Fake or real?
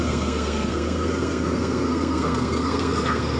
fake